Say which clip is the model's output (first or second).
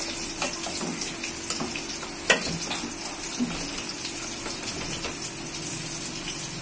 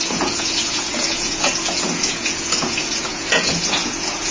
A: second